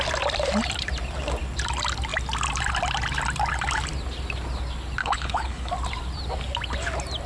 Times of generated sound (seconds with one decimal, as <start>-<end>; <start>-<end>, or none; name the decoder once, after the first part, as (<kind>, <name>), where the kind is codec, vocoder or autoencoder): 5.0-5.7 (codec, HILCodec)